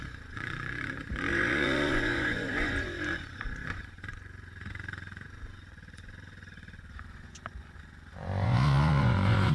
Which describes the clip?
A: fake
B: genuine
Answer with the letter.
A